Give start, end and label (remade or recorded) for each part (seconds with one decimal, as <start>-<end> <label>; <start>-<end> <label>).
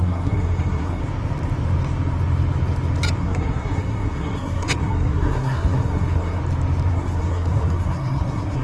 0.0-1.0 remade; 1.0-3.2 recorded; 3.2-6.4 remade; 6.4-6.9 recorded; 6.9-8.6 remade